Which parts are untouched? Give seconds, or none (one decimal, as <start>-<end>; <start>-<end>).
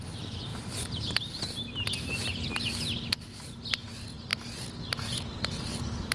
0.0-6.1